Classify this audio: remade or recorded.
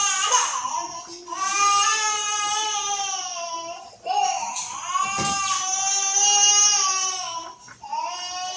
recorded